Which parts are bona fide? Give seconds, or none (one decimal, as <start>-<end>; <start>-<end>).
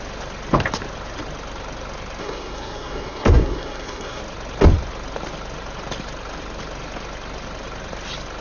0.0-2.2; 4.2-8.4